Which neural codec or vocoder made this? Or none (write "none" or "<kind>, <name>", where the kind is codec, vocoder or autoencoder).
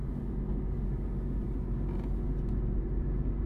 none